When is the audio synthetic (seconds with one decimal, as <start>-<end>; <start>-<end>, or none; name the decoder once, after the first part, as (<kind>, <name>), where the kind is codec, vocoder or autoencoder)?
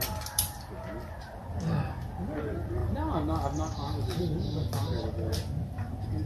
none